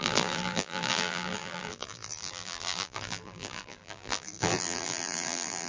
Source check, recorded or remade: remade